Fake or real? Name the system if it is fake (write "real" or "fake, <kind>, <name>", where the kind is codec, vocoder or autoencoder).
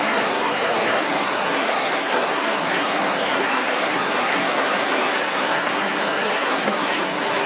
fake, codec, SNAC